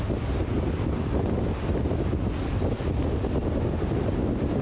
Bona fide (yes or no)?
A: yes